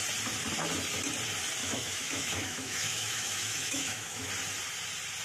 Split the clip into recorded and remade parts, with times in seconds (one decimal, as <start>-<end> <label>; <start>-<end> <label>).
0.0-1.6 recorded; 1.6-4.3 remade; 4.3-5.2 recorded